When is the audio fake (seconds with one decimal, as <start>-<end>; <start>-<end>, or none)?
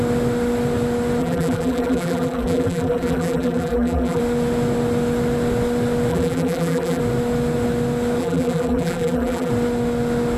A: 1.2-4.2; 6.1-7.0; 8.2-9.5